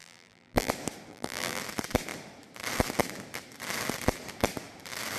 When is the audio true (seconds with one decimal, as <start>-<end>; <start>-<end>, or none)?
0.7-1.1; 1.6-5.2